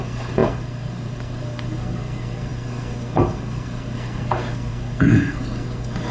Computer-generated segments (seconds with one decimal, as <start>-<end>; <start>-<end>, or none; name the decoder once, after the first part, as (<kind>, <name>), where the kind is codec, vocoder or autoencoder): 0.0-6.1 (codec, SNAC)

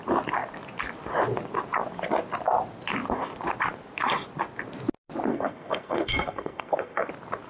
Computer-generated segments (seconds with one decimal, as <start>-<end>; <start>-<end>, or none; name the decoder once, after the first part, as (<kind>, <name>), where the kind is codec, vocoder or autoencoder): 5.3-7.1 (codec, SNAC)

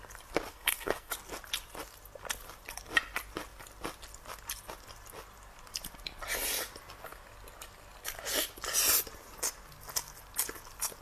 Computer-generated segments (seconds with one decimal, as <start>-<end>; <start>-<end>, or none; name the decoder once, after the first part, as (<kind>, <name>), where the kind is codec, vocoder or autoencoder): 0.5-1.1 (codec, SNAC)

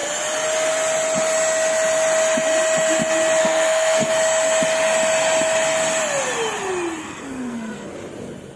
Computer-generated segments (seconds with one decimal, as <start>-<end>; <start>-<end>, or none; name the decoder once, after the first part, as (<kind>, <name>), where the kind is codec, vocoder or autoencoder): 3.4-4.1 (codec, SNAC); 7.0-7.9

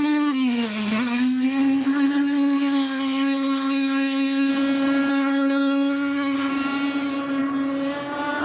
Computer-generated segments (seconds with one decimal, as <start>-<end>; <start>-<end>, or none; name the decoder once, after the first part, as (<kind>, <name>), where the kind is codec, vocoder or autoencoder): 0.0-4.5 (codec, SNAC); 5.1-6.5

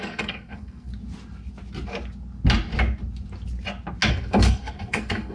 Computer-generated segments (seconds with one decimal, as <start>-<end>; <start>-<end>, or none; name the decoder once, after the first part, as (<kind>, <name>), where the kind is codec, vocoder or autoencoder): 0.0-0.9 (codec, SNAC); 4.1-5.3

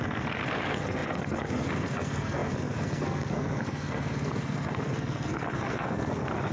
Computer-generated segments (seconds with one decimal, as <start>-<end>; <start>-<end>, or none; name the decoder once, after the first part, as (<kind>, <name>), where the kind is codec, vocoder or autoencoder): 0.0-6.5 (codec, SNAC)

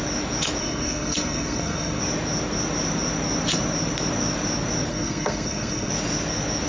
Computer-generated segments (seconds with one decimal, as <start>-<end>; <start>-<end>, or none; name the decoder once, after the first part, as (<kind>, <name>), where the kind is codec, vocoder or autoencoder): 0.6-2.0 (codec, SNAC); 4.9-5.9